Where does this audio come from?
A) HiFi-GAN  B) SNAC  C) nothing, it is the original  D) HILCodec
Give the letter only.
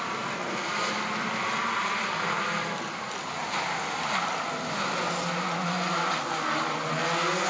C